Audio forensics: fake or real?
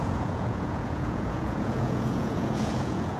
fake